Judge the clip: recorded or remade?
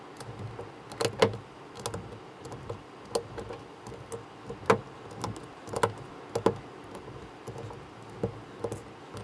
recorded